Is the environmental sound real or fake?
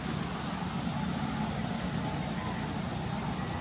real